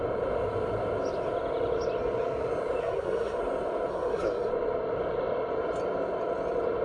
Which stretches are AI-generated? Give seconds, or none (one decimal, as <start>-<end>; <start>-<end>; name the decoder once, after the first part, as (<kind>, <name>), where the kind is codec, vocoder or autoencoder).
2.8-3.4 (codec, SNAC); 3.9-4.5